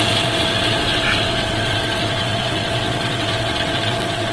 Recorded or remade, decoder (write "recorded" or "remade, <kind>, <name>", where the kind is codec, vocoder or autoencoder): remade, vocoder, WaveNeXt